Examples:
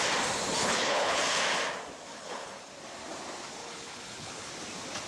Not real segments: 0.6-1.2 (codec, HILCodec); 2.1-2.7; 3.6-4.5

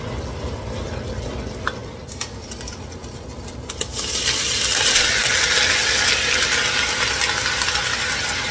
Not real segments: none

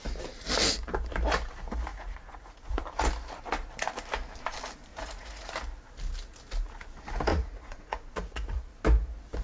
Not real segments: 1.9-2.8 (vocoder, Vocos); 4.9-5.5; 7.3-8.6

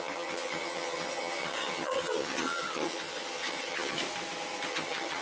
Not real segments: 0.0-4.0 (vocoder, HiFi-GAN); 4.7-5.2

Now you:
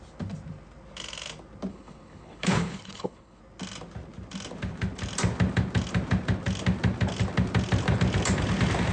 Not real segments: 1.7-3.4 (codec, HILCodec)

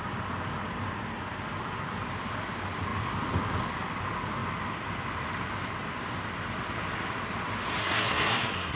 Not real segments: 7.8-8.8 (codec, SNAC)

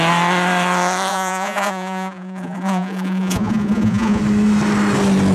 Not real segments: 1.1-4.2 (vocoder, Vocos)

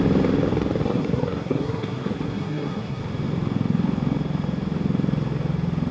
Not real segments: 0.8-3.0 (codec, SNAC)